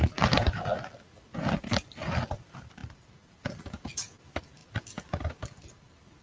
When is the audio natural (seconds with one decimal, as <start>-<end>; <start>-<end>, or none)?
0.0-6.2